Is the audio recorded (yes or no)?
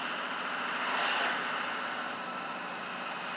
yes